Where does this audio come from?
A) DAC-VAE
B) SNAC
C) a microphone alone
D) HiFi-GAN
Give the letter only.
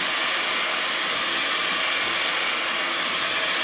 C